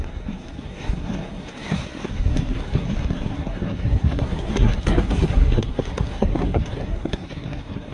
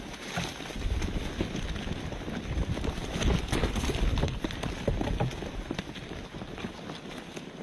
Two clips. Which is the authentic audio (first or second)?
second